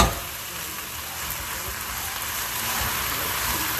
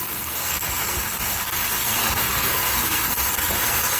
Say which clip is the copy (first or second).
second